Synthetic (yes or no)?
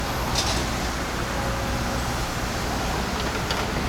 no